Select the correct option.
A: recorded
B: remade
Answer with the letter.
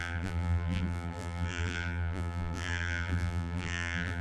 B